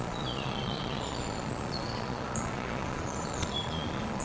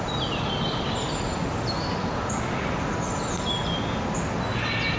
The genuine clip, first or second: second